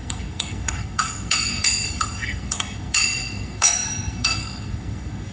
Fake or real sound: fake